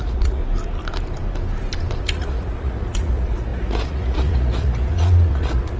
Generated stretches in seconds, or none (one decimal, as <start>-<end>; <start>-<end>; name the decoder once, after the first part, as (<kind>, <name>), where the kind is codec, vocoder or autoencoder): 0.0-0.4 (vocoder, Vocos); 2.0-5.8